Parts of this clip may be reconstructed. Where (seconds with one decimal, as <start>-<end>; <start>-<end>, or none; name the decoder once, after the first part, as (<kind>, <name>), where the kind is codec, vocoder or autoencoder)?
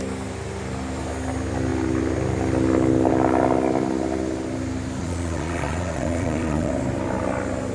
5.0-6.7 (vocoder, Vocos)